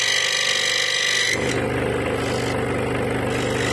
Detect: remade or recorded recorded